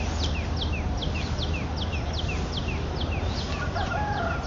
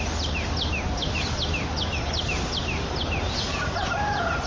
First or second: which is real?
first